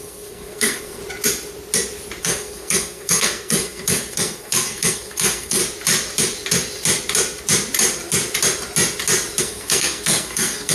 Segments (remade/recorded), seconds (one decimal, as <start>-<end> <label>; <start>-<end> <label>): 0.0-1.0 remade; 1.0-2.2 recorded; 2.2-5.6 remade; 5.6-9.4 recorded; 9.4-10.7 remade